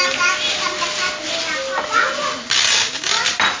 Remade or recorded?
recorded